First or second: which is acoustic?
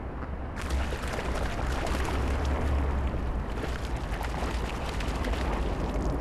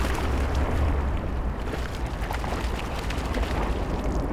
first